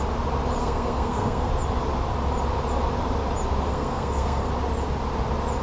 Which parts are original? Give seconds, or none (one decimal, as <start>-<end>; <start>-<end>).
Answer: 0.0-0.6; 1.5-3.7; 4.5-5.6